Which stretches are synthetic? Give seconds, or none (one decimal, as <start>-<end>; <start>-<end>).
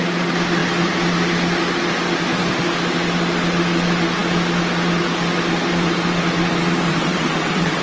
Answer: 6.9-7.8